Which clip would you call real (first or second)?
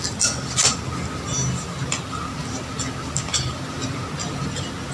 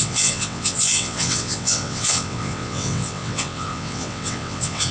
first